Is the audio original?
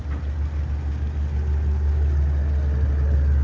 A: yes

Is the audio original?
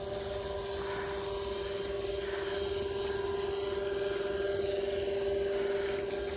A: yes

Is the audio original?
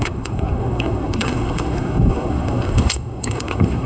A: no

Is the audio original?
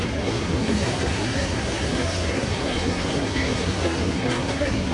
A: no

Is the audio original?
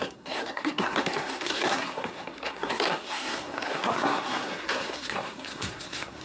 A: no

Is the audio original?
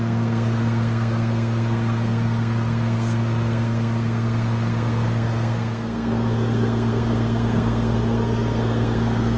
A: no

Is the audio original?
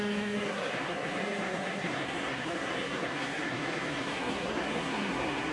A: no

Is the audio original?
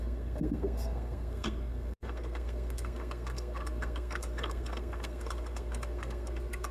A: no